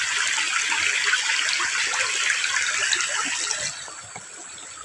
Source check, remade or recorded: recorded